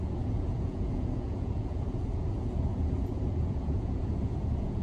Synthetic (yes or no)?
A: yes